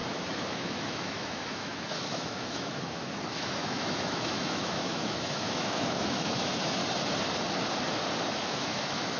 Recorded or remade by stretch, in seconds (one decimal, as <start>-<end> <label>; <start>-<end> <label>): 0.0-6.8 remade; 6.8-8.4 recorded; 8.4-9.2 remade